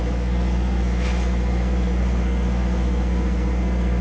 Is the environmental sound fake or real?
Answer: fake